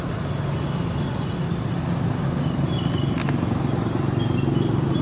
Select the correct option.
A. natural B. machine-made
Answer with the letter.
A